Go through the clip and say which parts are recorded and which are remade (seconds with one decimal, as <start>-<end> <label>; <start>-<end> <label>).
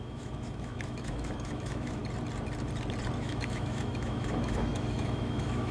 0.0-2.0 remade; 2.0-3.2 recorded; 3.2-5.7 remade